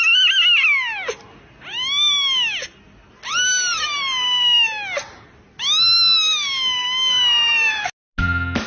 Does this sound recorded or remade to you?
recorded